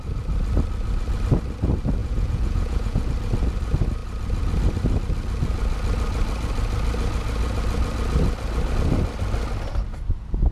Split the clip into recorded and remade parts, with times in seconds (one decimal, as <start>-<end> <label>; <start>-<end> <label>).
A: 0.0-2.0 recorded; 2.0-3.0 remade; 3.0-10.5 recorded